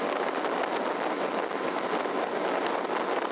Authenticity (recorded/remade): recorded